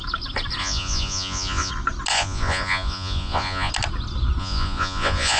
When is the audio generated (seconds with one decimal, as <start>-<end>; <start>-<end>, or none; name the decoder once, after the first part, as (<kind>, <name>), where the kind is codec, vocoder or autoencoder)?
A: 0.6-1.7 (vocoder, Vocos); 2.1-3.7; 4.4-5.4